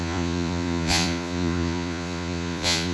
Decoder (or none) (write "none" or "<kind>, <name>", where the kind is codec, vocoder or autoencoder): vocoder, Vocos